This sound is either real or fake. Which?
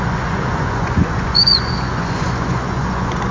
fake